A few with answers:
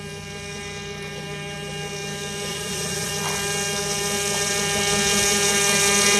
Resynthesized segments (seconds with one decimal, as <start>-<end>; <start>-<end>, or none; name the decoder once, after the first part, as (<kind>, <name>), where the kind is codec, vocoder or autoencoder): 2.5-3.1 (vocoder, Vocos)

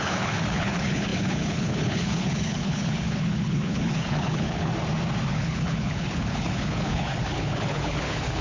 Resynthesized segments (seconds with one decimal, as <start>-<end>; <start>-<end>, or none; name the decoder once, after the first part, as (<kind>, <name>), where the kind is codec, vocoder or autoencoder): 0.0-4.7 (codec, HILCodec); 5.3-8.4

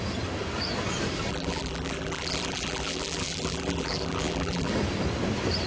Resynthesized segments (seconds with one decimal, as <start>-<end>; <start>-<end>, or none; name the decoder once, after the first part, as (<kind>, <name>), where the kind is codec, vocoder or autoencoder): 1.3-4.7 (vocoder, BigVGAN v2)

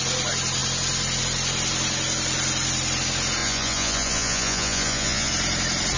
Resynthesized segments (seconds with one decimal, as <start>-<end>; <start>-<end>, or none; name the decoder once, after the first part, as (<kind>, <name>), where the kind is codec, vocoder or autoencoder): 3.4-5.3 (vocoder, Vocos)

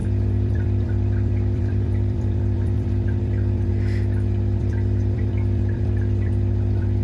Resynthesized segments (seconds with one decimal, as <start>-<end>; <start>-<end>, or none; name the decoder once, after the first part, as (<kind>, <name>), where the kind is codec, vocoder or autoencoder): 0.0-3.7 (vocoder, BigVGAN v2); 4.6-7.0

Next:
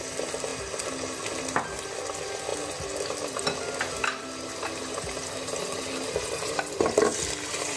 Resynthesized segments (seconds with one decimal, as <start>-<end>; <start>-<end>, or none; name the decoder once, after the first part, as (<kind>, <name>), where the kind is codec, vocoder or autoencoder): none

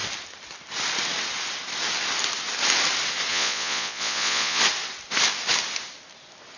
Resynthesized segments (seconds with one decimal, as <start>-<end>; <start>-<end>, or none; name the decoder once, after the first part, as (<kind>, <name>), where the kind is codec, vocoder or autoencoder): 3.3-4.6 (vocoder, Vocos)